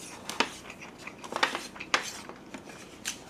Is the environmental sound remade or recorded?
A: recorded